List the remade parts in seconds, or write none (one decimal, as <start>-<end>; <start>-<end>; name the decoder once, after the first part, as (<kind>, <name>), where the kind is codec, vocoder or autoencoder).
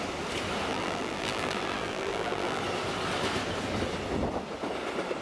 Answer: 0.7-2.6 (vocoder, BigVGAN v2)